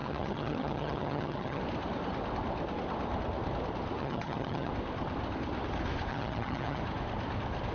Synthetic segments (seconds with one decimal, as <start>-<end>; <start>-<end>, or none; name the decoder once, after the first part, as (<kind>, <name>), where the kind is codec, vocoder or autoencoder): 0.0-1.6 (vocoder, HiFi-GAN); 4.0-4.7; 6.1-6.8